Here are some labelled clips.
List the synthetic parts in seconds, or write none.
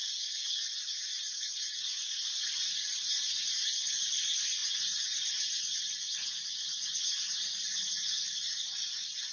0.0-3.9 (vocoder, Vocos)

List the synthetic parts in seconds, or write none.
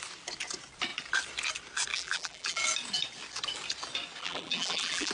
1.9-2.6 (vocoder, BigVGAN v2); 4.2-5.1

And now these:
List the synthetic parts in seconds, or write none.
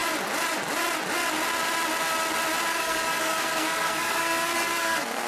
2.7-5.3 (codec, SNAC)